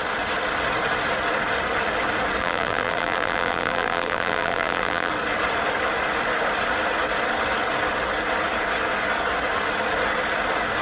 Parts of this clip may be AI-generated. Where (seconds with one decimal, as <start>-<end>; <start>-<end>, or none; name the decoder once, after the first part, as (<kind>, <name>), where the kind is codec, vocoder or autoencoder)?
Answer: 2.4-5.1 (vocoder, BigVGAN v2)